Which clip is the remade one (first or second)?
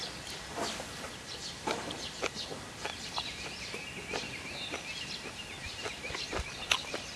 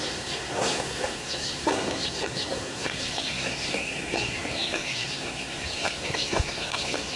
second